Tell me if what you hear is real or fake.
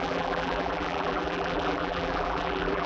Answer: fake